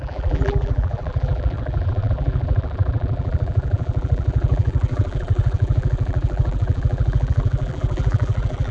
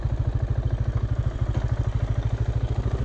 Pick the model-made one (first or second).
first